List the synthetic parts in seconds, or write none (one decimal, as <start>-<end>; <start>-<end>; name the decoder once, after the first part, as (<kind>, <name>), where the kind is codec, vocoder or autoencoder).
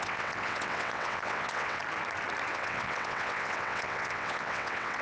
0.0-1.8 (vocoder, WaveNeXt); 2.5-5.0